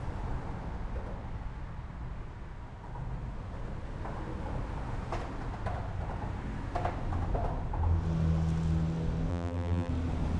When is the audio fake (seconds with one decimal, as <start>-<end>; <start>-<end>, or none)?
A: 9.3-9.9